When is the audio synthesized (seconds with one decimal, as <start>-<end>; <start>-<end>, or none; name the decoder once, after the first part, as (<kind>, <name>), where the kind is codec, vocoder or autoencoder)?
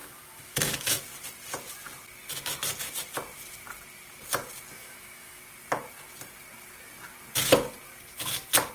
0.0-1.0 (autoencoder, DAC-VAE); 4.8-5.4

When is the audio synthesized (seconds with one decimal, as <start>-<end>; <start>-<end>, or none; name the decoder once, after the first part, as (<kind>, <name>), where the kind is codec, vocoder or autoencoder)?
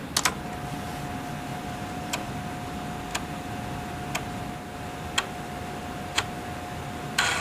1.5-2.3 (vocoder, BigVGAN v2)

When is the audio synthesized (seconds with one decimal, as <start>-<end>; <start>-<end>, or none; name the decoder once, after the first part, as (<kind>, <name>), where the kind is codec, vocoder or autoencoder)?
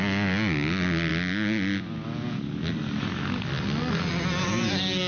none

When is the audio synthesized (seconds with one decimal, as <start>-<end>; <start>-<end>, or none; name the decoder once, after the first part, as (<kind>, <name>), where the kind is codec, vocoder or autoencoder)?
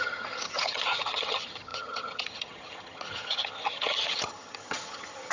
0.0-5.3 (vocoder, HiFi-GAN)